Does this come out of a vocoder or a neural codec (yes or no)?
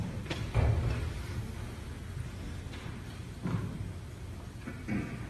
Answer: no